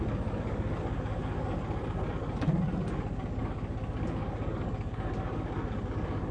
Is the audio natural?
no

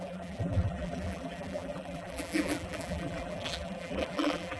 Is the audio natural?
no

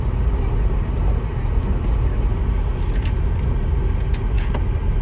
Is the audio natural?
yes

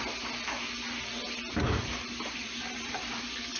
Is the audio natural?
yes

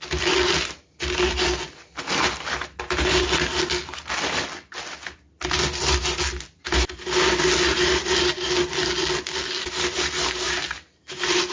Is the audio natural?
yes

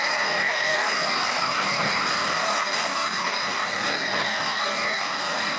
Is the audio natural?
no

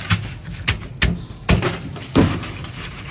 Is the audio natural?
yes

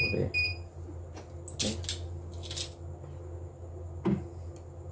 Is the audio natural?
yes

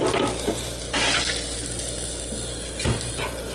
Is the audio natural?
yes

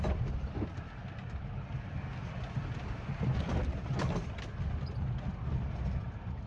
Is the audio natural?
yes